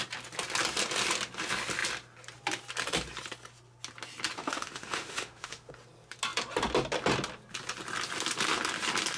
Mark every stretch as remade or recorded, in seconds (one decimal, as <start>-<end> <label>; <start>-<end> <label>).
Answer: 0.0-4.4 recorded; 4.4-5.7 remade; 5.7-9.2 recorded